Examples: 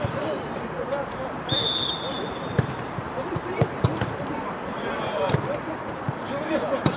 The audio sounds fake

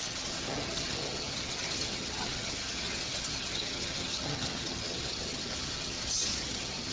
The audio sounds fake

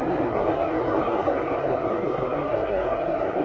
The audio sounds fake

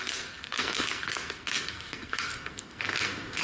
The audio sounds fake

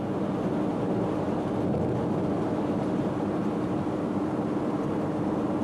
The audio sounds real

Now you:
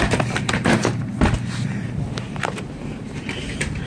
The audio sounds fake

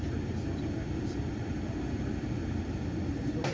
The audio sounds real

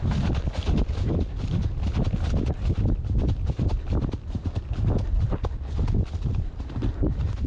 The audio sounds real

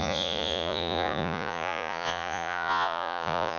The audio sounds fake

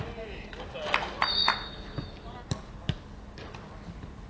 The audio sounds real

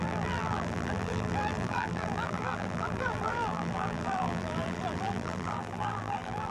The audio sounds fake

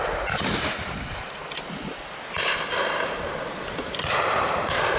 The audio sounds real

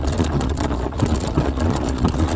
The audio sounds fake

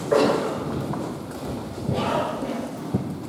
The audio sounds real